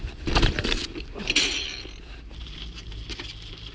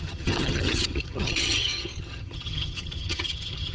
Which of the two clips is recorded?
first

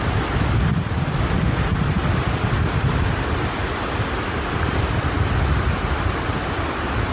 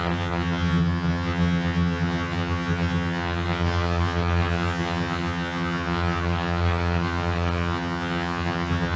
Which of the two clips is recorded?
first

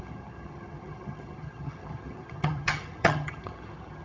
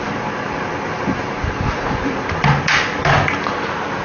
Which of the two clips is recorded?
second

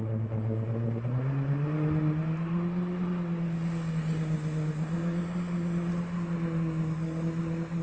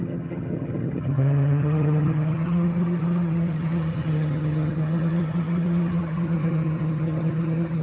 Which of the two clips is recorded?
first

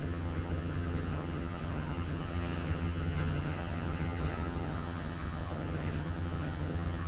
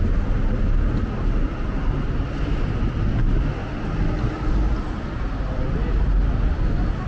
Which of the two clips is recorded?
second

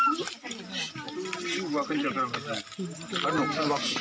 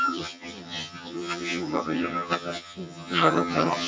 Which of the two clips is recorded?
first